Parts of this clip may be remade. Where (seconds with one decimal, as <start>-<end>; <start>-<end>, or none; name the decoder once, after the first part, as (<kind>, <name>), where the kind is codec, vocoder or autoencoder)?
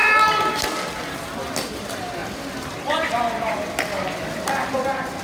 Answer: none